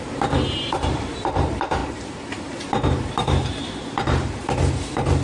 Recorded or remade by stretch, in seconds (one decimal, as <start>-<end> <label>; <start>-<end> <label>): 0.0-5.2 remade